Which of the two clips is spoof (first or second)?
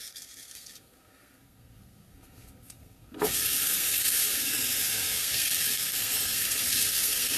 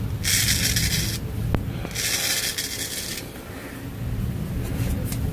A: first